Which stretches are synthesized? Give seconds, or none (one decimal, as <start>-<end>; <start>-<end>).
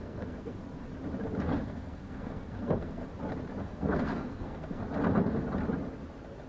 0.0-0.6; 1.6-3.0; 3.6-4.8